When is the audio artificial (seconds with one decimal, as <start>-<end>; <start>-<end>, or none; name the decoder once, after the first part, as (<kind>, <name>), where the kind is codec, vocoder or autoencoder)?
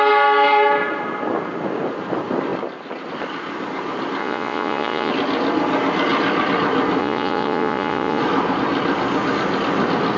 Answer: 4.2-5.1 (vocoder, Vocos); 7.0-8.2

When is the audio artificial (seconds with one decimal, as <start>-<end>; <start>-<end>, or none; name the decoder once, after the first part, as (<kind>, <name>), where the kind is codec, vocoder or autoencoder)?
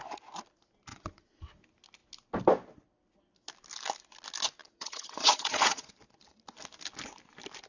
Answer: 0.9-1.6 (vocoder, Vocos); 4.6-5.9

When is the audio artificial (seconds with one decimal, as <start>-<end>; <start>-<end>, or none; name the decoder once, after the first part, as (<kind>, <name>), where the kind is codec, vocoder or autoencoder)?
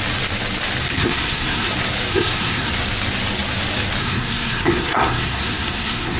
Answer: 0.8-1.7 (codec, SNAC); 2.1-2.7; 4.0-6.2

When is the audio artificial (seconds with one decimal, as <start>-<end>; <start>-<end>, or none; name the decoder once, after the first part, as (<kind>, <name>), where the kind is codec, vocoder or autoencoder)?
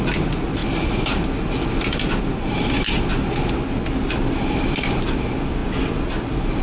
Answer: none